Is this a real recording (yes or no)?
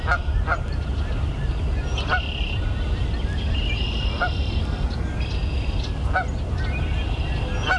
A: yes